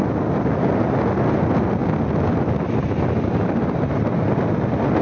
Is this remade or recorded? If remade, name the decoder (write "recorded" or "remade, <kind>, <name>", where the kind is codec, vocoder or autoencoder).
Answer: recorded